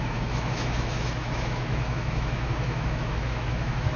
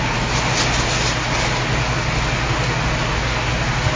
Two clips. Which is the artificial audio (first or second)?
first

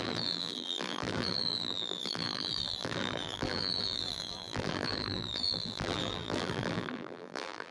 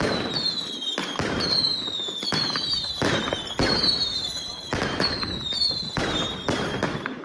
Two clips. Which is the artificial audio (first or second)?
first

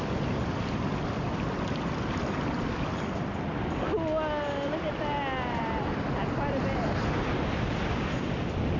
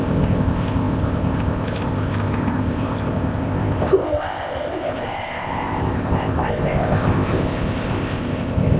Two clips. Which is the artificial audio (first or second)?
second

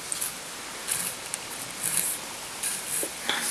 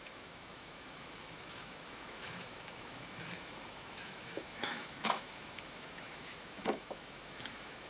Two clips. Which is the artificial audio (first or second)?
second